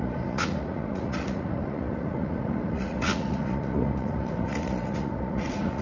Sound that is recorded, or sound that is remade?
remade